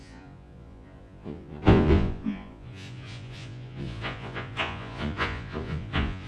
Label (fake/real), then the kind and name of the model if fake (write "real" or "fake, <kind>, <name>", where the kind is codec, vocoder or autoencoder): fake, vocoder, Vocos